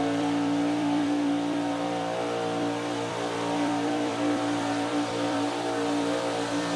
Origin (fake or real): fake